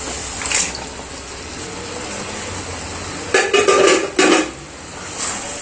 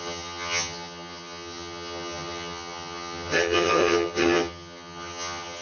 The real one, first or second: first